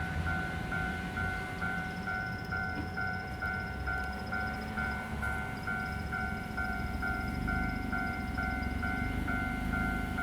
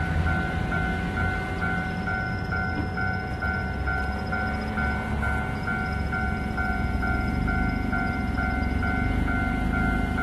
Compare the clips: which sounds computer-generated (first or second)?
first